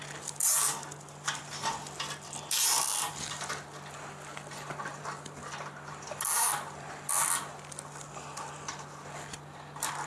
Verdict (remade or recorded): recorded